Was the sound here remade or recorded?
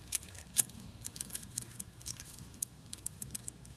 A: remade